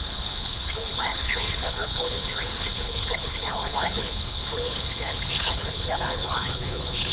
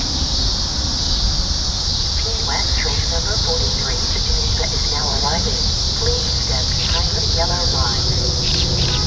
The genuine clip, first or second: second